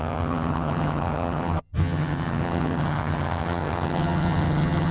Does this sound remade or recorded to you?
remade